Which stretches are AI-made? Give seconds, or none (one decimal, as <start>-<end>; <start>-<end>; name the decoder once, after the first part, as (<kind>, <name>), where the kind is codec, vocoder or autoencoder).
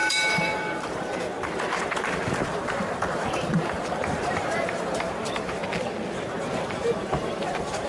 0.0-5.6 (vocoder, BigVGAN v2); 6.3-7.9